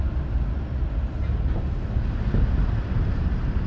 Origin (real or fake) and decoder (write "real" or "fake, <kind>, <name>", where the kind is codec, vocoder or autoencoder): real